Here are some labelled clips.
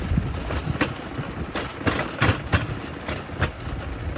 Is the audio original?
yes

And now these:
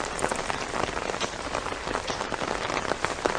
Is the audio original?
no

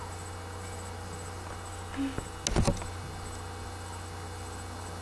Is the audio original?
yes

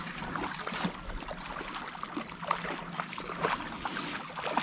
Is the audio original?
yes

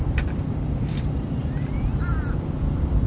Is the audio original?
no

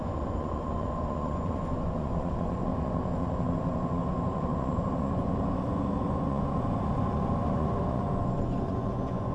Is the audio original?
no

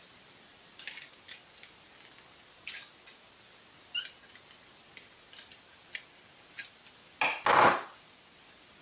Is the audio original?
yes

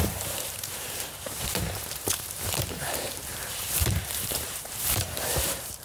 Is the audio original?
no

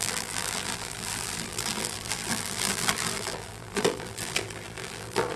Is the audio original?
no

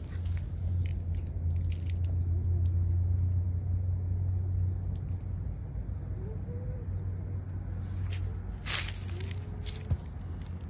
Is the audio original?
yes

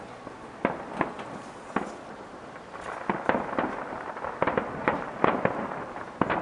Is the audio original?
yes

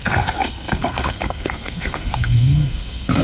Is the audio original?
no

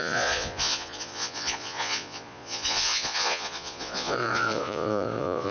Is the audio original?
no